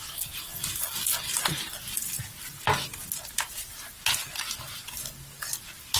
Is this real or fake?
real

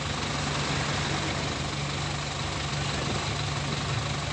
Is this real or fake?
real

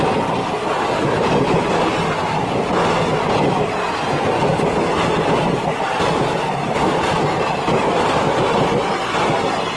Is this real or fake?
real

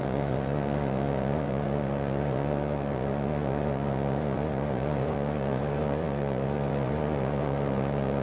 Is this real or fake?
fake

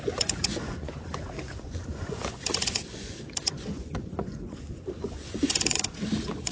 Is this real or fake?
fake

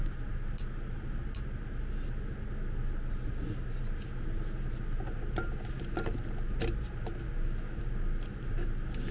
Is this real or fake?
real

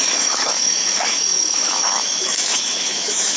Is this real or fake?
fake